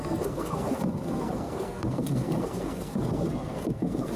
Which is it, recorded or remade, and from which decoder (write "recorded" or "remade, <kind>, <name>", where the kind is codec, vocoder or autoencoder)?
remade, codec, SNAC